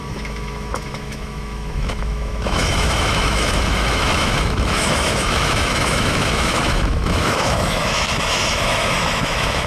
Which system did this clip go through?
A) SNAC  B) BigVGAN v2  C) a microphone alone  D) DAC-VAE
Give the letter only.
D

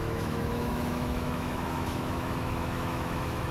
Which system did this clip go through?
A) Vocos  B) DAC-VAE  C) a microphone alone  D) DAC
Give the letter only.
B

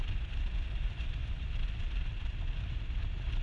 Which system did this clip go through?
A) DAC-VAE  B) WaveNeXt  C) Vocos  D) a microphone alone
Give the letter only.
D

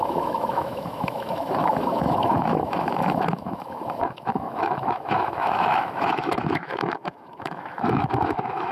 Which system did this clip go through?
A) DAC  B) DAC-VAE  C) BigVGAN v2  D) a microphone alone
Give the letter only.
B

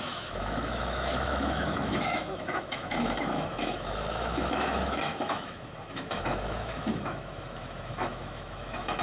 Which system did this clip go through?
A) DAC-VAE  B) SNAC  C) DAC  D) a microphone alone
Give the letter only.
A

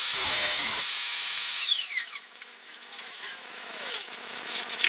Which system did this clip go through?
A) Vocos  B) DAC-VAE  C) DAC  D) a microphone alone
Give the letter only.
B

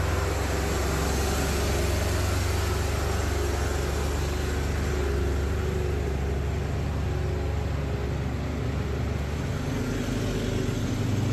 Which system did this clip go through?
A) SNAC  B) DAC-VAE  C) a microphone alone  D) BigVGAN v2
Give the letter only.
C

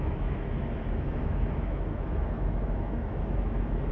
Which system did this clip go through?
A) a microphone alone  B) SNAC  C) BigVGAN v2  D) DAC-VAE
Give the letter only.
D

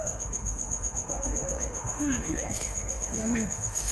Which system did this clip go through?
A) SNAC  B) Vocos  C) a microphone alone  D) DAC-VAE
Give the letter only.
D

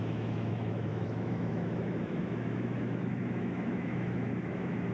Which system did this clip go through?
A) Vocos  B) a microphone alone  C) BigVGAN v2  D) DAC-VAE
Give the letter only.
D